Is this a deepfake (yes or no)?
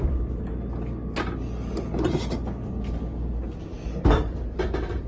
no